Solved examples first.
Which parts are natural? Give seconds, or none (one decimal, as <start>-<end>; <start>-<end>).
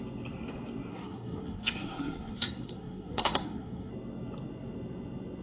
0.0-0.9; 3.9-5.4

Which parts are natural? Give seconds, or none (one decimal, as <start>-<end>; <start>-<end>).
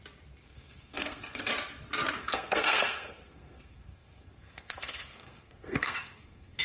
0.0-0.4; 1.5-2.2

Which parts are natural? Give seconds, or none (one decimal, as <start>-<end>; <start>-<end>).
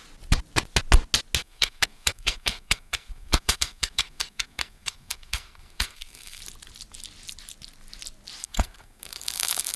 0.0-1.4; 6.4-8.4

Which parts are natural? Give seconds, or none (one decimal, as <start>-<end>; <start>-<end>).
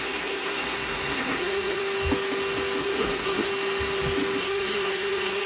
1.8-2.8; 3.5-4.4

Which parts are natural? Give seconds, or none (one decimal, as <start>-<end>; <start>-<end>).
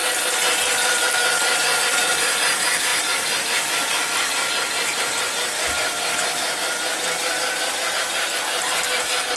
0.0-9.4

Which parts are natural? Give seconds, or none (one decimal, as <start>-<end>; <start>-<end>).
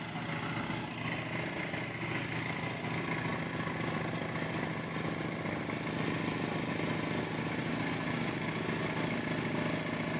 0.0-10.2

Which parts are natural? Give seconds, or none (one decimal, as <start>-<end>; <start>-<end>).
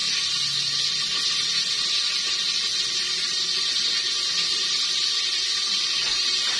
0.0-6.6